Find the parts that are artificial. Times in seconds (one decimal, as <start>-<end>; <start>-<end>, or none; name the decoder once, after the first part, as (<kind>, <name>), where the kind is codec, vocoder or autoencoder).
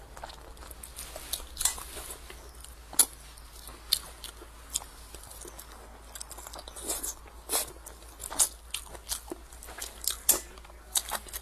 none